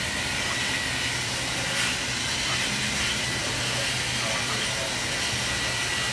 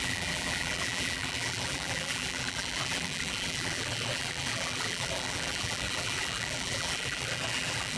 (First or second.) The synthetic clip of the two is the second